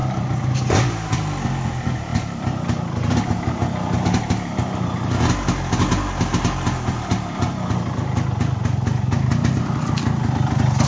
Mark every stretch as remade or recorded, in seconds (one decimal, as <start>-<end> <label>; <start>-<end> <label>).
0.0-10.9 recorded